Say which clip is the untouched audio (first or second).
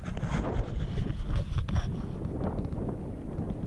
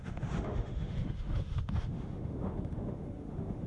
first